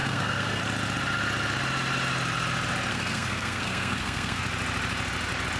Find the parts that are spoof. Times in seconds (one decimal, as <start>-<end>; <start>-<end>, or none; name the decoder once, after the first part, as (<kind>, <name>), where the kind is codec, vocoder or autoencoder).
0.0-0.6 (codec, SNAC); 2.9-4.4